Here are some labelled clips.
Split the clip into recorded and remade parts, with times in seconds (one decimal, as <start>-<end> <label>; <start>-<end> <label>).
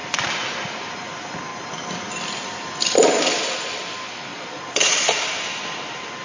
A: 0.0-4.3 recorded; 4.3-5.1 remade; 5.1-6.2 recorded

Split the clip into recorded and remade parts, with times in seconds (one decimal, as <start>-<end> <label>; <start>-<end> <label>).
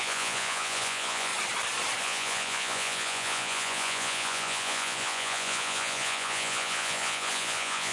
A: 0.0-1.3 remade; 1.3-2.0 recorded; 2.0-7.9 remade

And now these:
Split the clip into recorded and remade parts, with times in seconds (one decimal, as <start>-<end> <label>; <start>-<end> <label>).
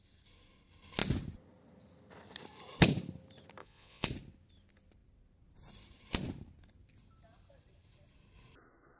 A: 0.0-3.6 recorded; 3.6-4.1 remade; 4.1-9.0 recorded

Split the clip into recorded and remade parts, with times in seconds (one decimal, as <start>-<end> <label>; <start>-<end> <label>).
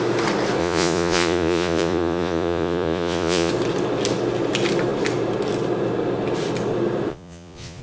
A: 0.0-0.6 recorded; 0.6-3.5 remade; 3.5-7.1 recorded; 7.1-7.8 remade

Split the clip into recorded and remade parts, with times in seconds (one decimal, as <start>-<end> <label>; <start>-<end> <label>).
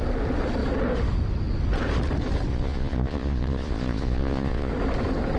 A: 0.0-2.5 recorded; 2.5-4.7 remade; 4.7-5.4 recorded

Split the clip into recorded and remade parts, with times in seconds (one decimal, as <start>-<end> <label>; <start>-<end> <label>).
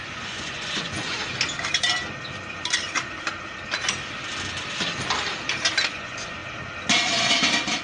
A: 0.0-1.2 remade; 1.2-5.9 recorded; 5.9-6.4 remade; 6.4-7.8 recorded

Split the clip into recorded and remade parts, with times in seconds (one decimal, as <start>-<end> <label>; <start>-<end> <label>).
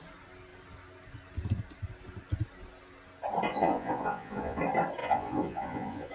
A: 0.0-3.5 recorded; 3.5-4.6 remade; 4.6-5.0 recorded; 5.0-6.1 remade